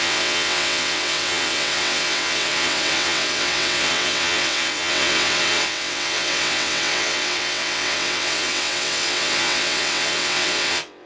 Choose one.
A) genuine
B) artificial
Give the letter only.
B